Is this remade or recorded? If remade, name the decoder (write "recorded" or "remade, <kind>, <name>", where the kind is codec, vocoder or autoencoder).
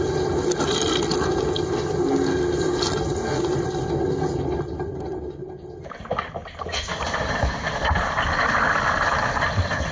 recorded